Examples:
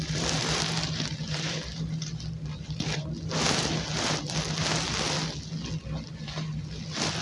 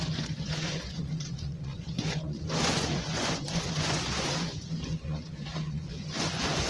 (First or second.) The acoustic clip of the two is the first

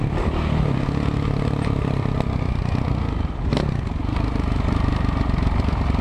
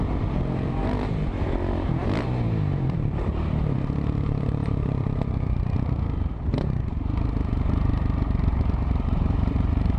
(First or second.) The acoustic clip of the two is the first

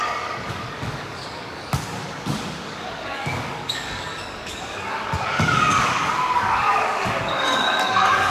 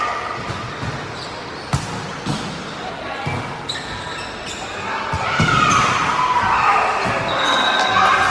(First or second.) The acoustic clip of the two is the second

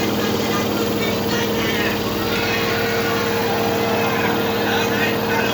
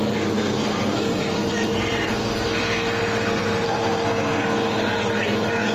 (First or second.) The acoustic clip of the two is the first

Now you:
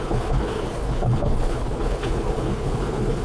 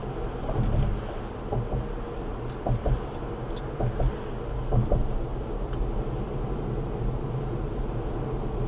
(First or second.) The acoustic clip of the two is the second